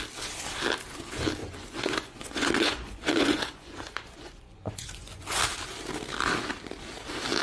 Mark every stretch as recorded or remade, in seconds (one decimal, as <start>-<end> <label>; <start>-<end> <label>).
0.0-1.4 recorded; 1.4-5.4 remade; 5.4-7.4 recorded